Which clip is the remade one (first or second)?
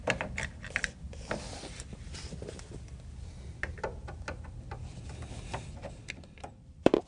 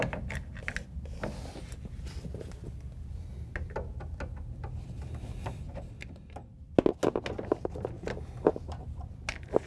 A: first